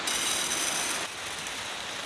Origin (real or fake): real